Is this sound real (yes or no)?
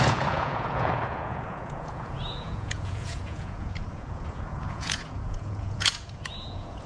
no